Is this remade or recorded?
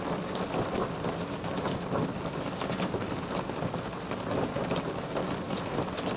recorded